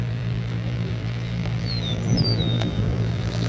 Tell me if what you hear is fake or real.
fake